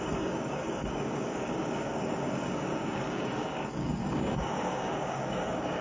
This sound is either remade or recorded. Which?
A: remade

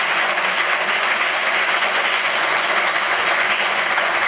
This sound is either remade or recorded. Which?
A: remade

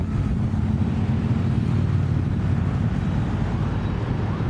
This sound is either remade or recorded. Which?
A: recorded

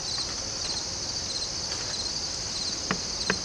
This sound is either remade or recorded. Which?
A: recorded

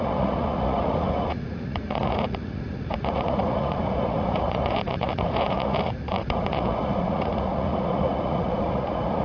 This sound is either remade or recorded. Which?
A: remade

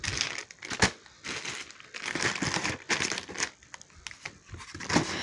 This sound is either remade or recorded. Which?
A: recorded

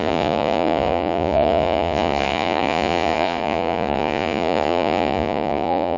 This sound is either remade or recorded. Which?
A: remade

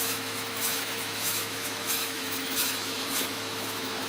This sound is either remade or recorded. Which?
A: remade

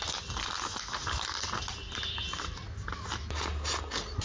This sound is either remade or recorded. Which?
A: recorded